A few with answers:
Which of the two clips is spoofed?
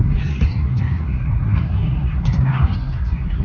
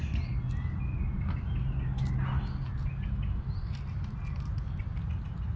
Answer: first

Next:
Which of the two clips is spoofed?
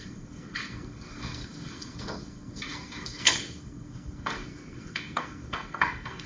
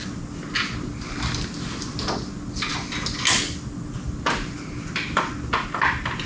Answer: first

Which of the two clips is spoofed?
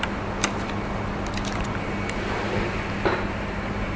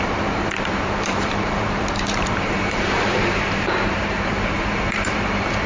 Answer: second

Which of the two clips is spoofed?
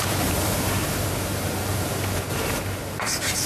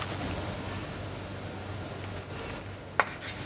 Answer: first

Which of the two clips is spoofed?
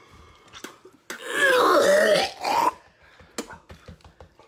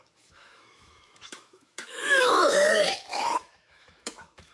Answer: second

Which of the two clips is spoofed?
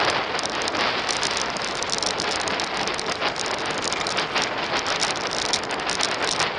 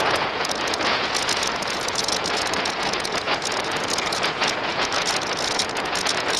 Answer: second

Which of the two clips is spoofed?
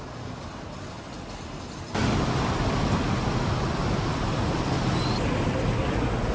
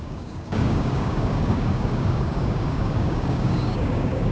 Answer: second